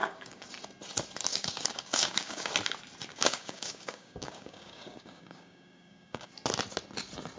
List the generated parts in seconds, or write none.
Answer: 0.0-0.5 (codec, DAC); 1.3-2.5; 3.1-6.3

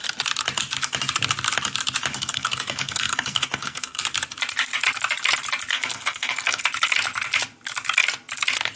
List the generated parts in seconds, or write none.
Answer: 2.1-4.0 (codec, SNAC); 5.7-6.6

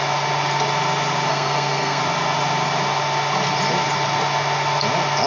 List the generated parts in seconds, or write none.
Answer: 1.3-2.0 (codec, SNAC)

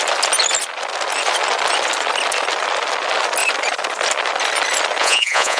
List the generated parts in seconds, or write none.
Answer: 5.0-5.6 (vocoder, Vocos)

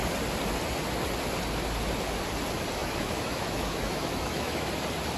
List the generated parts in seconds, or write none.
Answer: 2.8-4.7 (autoencoder, DAC-VAE)

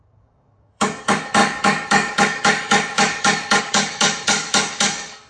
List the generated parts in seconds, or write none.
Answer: 0.0-5.3 (codec, DAC)

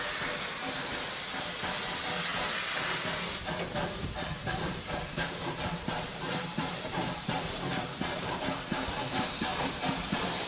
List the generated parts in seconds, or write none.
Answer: 4.4-9.3 (vocoder, BigVGAN v2)

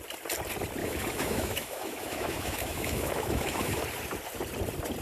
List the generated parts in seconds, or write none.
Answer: 0.8-3.8 (autoencoder, DAC-VAE)